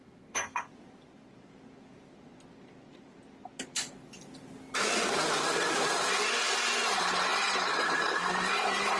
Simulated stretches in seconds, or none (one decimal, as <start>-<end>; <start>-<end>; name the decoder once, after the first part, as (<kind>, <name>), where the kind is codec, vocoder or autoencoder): 0.0-0.7 (codec, SNAC)